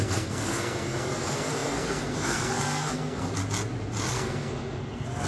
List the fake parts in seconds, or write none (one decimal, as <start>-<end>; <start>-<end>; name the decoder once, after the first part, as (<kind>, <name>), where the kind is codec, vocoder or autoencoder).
0.0-3.4 (codec, SNAC); 4.1-5.3